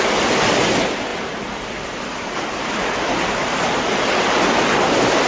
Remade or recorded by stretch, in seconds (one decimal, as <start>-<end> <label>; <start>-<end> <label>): 0.0-5.3 remade